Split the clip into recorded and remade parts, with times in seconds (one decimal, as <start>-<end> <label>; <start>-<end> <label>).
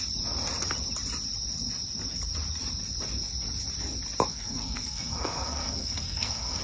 0.0-4.3 recorded; 4.3-6.6 remade